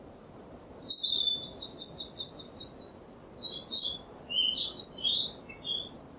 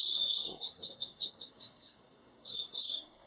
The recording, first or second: first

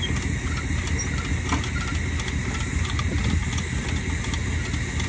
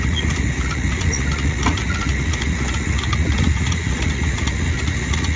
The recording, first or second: first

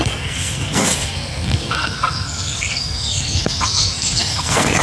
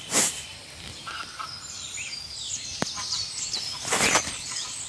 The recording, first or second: second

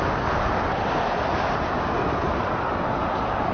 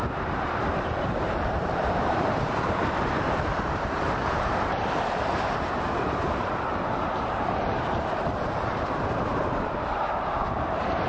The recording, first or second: first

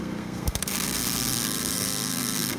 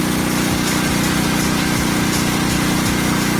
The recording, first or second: second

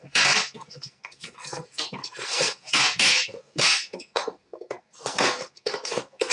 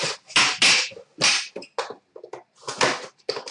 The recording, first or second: second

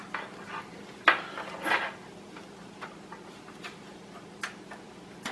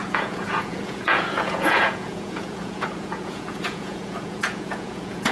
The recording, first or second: first